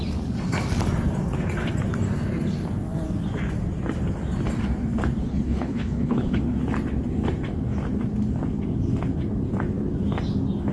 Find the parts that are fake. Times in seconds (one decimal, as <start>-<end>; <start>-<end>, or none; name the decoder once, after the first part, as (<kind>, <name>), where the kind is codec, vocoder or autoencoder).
5.2-6.4 (codec, HILCodec)

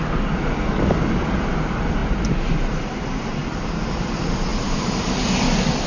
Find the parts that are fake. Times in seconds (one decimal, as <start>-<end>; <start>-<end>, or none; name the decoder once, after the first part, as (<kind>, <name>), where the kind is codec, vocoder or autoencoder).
4.5-5.0 (vocoder, BigVGAN v2)

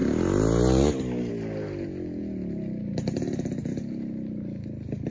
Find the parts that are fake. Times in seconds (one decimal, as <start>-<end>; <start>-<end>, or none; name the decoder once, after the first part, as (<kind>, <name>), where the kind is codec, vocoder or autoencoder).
none